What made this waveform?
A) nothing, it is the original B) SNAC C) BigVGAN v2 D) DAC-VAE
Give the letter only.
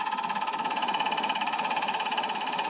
D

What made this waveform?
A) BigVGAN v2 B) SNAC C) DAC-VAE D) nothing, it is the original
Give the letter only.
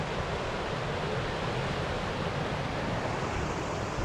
D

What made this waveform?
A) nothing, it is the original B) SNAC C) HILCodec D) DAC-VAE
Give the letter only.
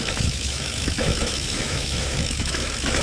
D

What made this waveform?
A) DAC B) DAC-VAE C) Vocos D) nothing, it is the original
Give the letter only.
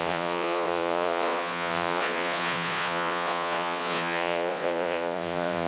C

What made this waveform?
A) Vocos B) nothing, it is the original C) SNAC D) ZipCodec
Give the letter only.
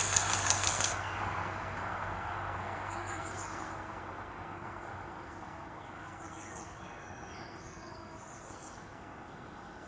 C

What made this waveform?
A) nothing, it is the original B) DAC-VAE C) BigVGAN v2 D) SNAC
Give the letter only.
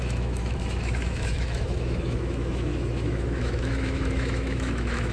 B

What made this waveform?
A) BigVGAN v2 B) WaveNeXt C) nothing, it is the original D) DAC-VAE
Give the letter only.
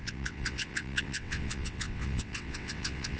B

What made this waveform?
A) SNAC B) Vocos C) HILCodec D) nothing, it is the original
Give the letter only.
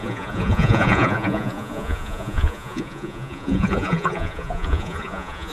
B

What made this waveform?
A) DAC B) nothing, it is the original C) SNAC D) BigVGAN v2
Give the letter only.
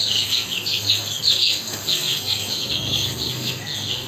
C